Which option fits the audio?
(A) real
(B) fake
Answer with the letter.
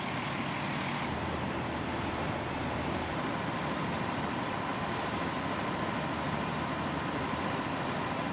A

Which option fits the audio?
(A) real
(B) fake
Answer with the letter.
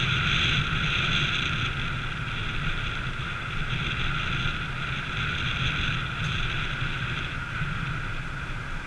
A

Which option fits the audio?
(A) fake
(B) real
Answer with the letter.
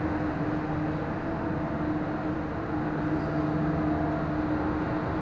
B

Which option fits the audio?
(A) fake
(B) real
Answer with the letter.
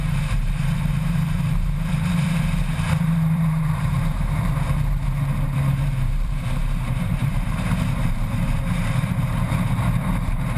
A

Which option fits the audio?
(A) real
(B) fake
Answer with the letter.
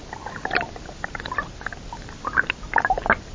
A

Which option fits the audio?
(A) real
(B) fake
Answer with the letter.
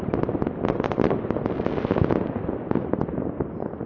A